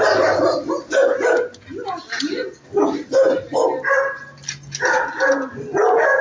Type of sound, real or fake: real